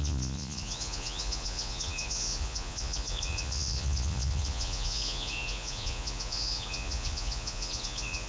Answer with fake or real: fake